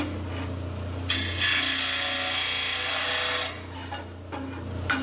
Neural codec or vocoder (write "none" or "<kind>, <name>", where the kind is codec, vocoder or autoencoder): none